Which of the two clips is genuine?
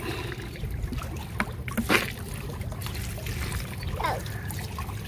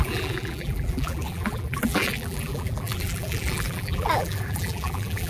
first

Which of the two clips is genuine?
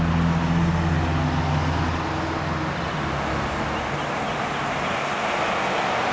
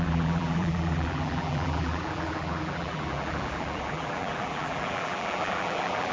first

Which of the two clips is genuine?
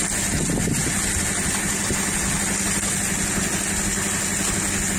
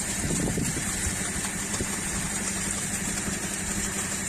first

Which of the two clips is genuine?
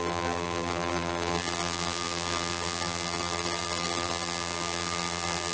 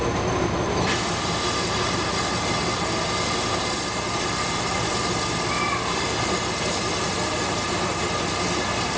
second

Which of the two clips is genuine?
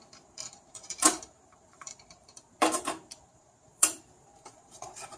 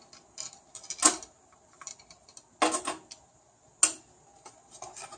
second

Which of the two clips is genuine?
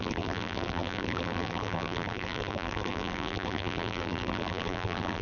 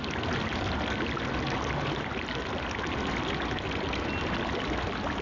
second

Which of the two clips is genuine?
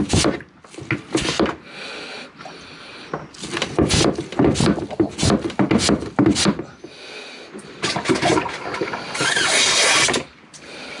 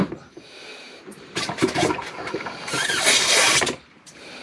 first